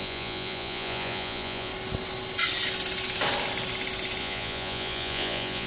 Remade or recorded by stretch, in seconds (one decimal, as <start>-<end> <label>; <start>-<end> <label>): 0.0-1.7 remade; 1.7-4.2 recorded; 4.2-5.7 remade